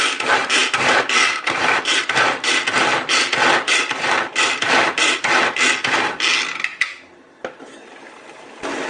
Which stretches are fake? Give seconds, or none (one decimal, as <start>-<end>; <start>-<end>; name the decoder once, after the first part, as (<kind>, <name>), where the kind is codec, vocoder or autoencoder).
none